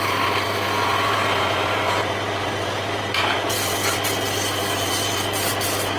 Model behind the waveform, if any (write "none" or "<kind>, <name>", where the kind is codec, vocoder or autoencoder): none